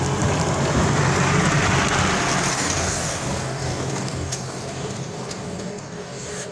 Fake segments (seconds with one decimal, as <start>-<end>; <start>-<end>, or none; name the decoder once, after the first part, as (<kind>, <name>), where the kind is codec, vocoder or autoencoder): 2.5-6.5 (codec, DAC)